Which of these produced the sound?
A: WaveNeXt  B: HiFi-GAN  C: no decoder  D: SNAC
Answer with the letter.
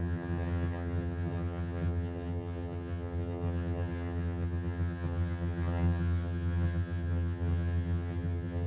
B